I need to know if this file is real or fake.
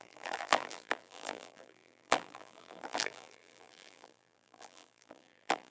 fake